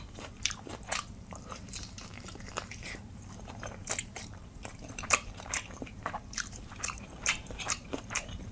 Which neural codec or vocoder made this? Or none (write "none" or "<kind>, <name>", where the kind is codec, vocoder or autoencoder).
vocoder, BigVGAN v2